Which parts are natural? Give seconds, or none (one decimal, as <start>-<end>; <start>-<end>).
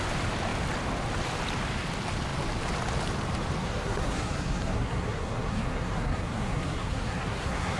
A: 0.0-3.6